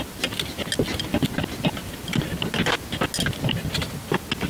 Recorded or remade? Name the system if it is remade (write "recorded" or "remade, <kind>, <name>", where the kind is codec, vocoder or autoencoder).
recorded